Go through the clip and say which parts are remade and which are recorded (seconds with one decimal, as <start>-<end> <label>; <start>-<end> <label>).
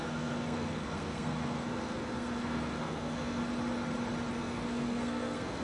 0.0-3.4 remade; 3.4-4.3 recorded; 4.3-5.6 remade